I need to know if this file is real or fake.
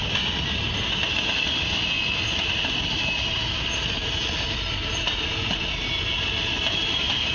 real